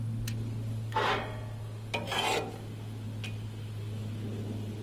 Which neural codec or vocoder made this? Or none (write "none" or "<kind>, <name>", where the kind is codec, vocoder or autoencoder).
none